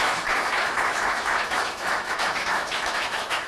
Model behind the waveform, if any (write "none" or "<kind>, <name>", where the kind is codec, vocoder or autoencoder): autoencoder, DAC-VAE